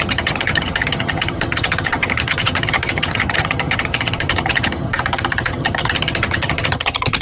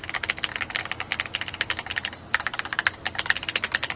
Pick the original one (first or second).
second